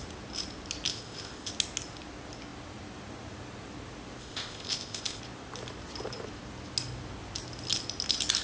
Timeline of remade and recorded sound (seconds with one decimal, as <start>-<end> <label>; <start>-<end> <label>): 0.0-0.9 recorded; 0.9-1.5 remade; 1.5-4.2 recorded; 4.2-5.2 remade; 5.2-8.4 recorded